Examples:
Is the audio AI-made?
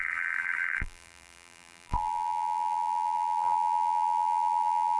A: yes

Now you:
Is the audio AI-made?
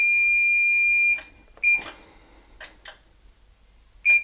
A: no